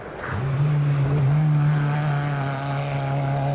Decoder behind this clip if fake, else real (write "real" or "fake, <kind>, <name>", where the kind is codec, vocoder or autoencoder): real